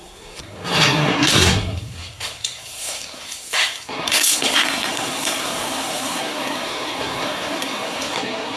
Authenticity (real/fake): fake